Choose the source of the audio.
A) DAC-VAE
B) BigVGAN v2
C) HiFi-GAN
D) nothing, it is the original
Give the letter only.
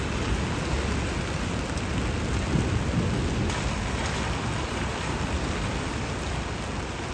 D